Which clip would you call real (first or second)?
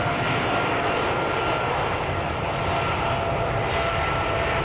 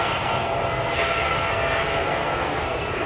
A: first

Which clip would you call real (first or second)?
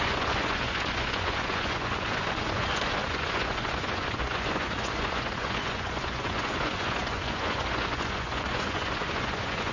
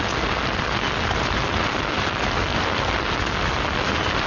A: second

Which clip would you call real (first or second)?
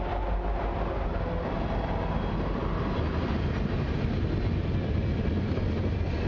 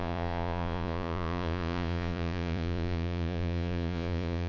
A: first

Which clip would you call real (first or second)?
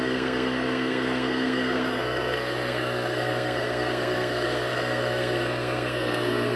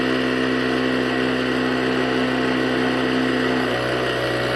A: second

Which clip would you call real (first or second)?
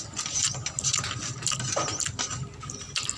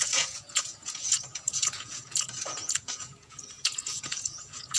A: first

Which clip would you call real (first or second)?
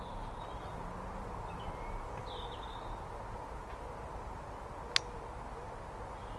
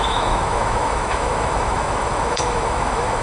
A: first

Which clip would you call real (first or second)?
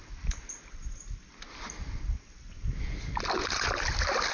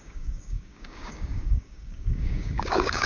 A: first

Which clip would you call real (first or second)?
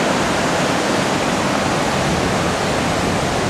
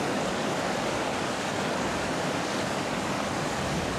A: first